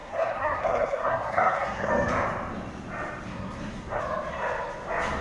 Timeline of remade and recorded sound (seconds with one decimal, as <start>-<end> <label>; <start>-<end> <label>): 0.0-1.9 remade; 1.9-3.3 recorded; 3.3-4.0 remade; 4.0-5.2 recorded